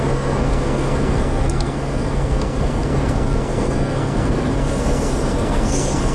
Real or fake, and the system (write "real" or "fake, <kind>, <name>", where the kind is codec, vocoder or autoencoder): fake, codec, SNAC